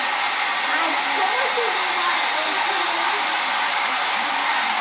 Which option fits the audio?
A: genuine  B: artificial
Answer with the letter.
A